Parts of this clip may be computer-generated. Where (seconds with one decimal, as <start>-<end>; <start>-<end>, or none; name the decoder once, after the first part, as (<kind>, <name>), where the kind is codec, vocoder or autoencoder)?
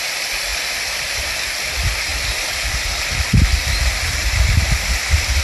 0.0-5.4 (vocoder, BigVGAN v2)